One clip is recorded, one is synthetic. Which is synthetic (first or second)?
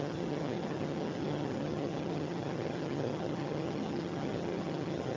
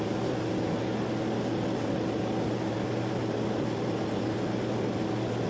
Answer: first